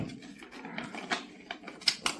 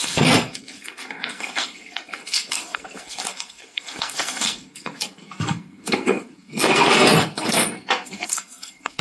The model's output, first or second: second